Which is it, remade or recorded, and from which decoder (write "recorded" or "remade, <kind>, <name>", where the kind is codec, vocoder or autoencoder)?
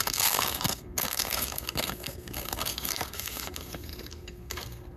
remade, codec, SNAC